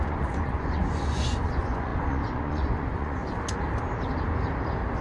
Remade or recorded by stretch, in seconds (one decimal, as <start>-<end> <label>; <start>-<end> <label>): 0.0-3.2 remade; 3.2-5.0 recorded